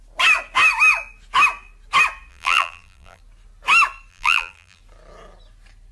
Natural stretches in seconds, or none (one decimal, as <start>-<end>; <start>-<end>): 0.0-2.3; 3.2-4.1; 4.8-5.9